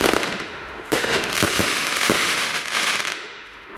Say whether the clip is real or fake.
fake